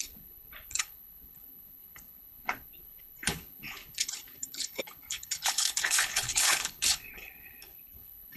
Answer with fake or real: fake